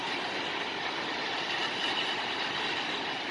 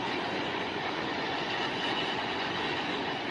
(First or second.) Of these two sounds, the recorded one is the first